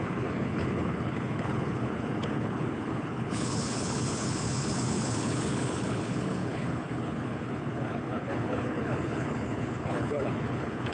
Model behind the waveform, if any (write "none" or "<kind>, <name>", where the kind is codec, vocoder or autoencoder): codec, HILCodec